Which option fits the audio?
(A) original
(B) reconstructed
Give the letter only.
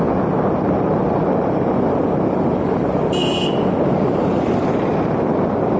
A